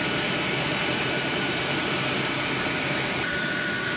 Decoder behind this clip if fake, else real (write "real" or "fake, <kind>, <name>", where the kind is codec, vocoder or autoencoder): fake, vocoder, BigVGAN v2